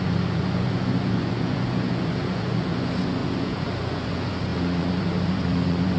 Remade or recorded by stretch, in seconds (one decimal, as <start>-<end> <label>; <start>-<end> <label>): 0.0-6.0 remade